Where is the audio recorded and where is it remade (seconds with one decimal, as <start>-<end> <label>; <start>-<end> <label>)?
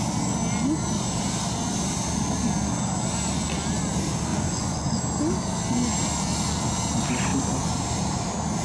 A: 0.0-4.3 recorded; 4.3-5.0 remade; 5.0-8.6 recorded